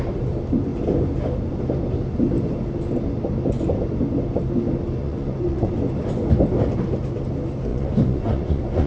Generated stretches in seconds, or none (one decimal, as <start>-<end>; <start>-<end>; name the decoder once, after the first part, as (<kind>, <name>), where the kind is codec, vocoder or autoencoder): 5.0-5.7 (vocoder, Vocos); 7.7-8.9